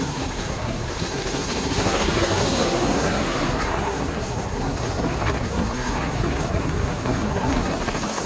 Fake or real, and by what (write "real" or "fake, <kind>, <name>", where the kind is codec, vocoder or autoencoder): fake, codec, SNAC